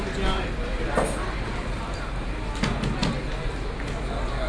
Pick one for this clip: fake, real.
real